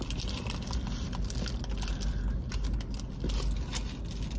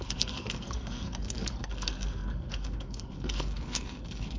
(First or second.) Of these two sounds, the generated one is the second